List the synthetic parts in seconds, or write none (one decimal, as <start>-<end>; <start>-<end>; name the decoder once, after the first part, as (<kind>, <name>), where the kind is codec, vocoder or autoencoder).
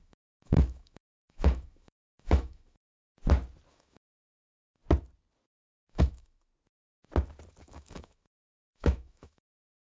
0.0-2.9 (autoencoder, DAC-VAE); 3.7-4.8; 5.9-6.5; 7.6-9.8